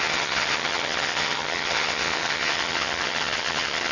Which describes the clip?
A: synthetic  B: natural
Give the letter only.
A